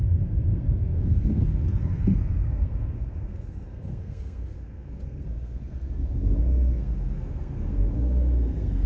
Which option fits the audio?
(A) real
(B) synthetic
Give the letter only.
B